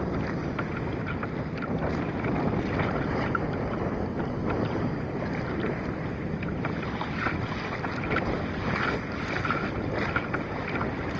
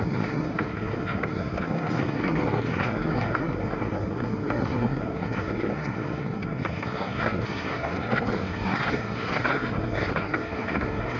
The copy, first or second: second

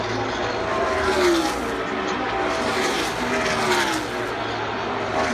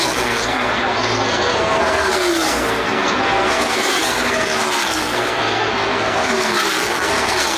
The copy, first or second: second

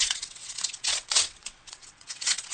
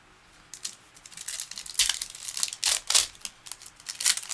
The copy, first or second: first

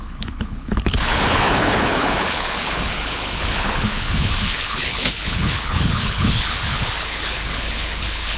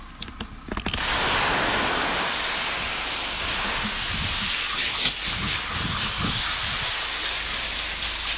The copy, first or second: first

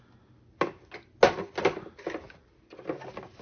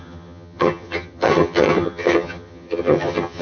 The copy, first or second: second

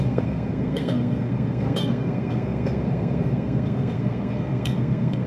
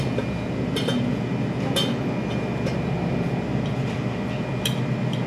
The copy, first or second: first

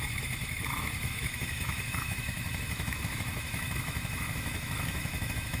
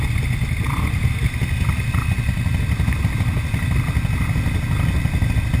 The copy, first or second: first